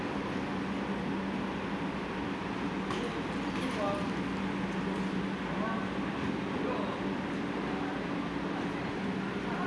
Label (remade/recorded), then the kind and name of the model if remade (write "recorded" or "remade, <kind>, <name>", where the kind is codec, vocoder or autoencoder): recorded